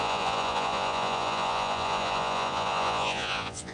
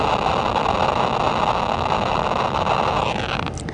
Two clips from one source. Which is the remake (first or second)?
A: first